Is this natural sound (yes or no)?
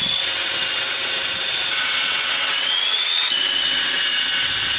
no